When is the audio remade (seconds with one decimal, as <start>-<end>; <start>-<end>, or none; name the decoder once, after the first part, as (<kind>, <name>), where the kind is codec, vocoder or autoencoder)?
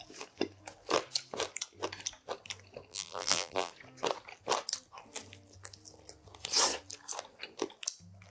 2.9-3.7 (vocoder, BigVGAN v2)